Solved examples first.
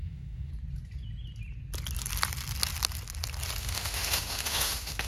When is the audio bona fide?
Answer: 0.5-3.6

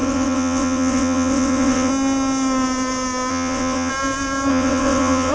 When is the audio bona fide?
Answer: 1.9-3.3; 3.9-4.5

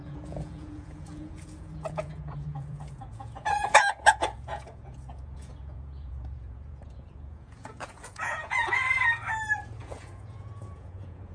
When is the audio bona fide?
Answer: 8.8-9.8

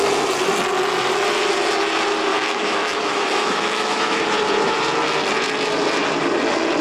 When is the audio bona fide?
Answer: 0.0-2.3; 4.2-6.8

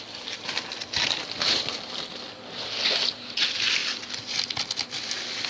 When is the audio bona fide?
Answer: 0.0-5.5

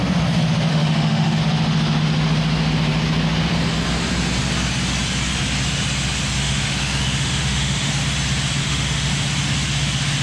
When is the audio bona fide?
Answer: 0.0-0.7; 1.4-6.4; 7.9-8.6; 9.1-10.2

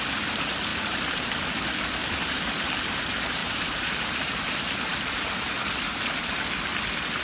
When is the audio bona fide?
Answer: 0.0-0.7; 1.3-2.0; 2.7-3.4; 5.5-7.2